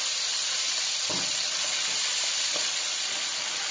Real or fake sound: real